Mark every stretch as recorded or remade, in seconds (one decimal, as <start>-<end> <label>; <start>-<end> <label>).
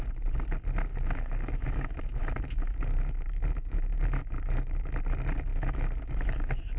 0.0-0.9 recorded; 0.9-5.0 remade; 5.0-5.5 recorded; 5.5-6.8 remade